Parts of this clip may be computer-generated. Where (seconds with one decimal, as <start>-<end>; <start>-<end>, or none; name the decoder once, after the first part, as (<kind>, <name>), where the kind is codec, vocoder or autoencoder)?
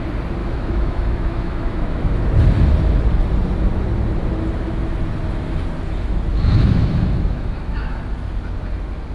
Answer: 0.4-2.2 (autoencoder, DAC-VAE); 6.3-8.0